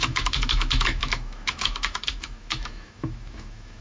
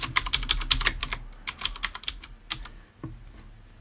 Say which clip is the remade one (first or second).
first